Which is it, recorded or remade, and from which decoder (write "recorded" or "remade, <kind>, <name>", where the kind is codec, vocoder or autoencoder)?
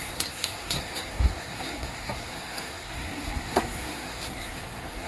remade, codec, SNAC